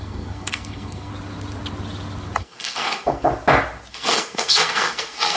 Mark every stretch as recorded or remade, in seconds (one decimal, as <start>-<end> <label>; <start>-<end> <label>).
0.0-1.1 remade; 1.1-2.4 recorded; 2.4-3.3 remade; 3.3-3.9 recorded; 3.9-5.4 remade